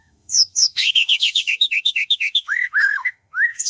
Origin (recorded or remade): remade